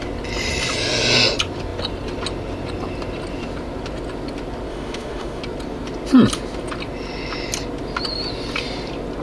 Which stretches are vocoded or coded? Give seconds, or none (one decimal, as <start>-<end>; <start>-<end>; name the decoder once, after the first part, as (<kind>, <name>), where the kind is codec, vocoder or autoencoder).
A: 4.7-5.4 (autoencoder, DAC-VAE)